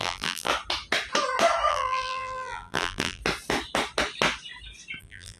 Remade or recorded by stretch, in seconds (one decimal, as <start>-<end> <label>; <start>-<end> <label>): 0.0-0.5 remade; 0.5-1.7 recorded; 1.7-3.2 remade; 3.2-5.0 recorded; 5.0-5.4 remade